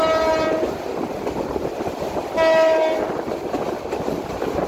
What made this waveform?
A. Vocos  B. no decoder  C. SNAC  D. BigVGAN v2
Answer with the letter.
B